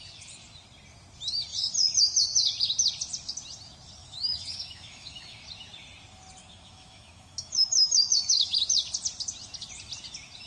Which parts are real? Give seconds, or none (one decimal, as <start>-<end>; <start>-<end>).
0.0-4.0; 5.4-6.4; 8.6-10.5